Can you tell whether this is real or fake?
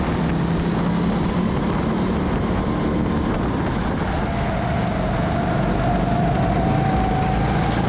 real